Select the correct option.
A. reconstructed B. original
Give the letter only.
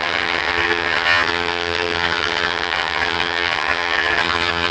A